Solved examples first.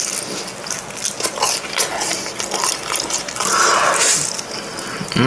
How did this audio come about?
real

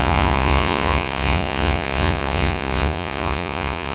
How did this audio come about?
fake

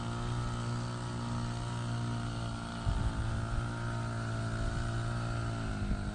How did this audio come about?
real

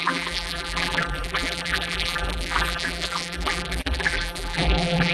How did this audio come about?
fake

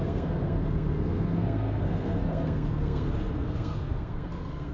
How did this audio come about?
fake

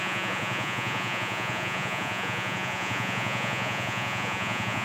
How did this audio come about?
fake